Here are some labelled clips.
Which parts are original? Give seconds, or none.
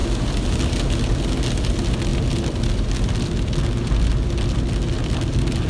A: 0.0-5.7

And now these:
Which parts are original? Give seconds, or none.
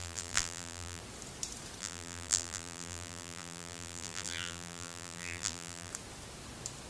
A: 1.0-1.8; 5.9-6.9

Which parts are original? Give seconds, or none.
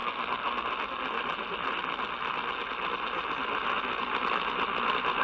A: 0.0-5.2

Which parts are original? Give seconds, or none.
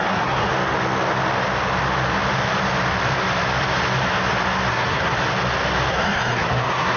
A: 0.5-4.7; 5.2-5.9